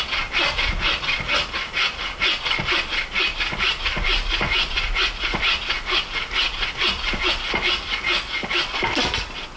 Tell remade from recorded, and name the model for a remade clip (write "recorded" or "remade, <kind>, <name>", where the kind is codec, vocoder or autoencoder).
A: recorded